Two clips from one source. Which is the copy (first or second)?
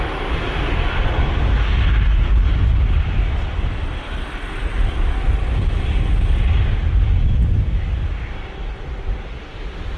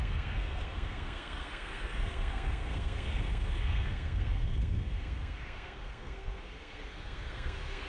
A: second